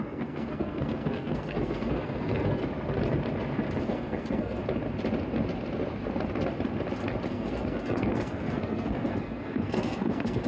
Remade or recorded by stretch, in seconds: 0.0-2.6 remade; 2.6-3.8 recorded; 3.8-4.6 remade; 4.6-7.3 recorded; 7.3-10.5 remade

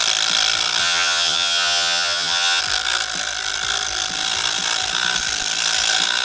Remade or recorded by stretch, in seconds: 0.0-0.8 recorded; 0.8-2.6 remade; 2.6-6.2 recorded

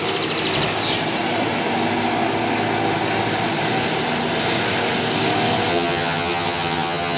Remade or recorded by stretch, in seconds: 0.0-5.7 recorded; 5.7-7.2 remade

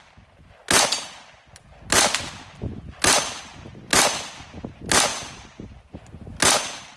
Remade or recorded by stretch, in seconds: 0.0-7.0 recorded

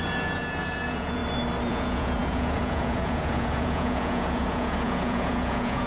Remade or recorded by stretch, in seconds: 0.0-1.2 remade; 1.2-1.7 recorded; 1.7-5.9 remade

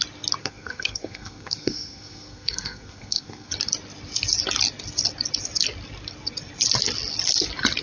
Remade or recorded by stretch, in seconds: 0.0-0.4 recorded; 0.4-3.5 remade; 3.5-7.8 recorded

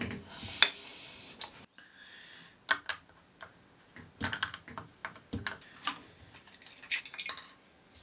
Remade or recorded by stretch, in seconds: 0.0-0.9 recorded; 0.9-2.3 remade; 2.3-8.0 recorded

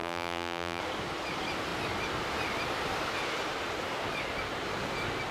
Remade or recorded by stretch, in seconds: 0.0-0.8 remade; 0.8-5.3 recorded